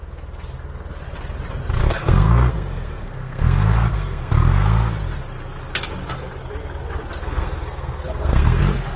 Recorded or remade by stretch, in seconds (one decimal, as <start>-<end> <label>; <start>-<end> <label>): 0.0-1.8 recorded; 1.8-4.9 remade; 4.9-7.2 recorded; 7.2-8.6 remade; 8.6-9.0 recorded